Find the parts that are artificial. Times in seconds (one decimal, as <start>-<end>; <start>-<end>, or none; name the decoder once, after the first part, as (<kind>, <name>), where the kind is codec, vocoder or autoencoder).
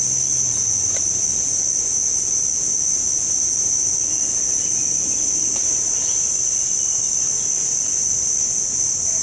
none